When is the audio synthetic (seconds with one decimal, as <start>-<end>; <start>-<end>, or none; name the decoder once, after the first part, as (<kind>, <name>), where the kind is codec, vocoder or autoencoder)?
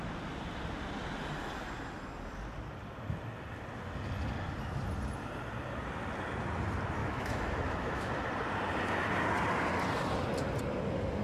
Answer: 7.0-8.1 (autoencoder, DAC-VAE)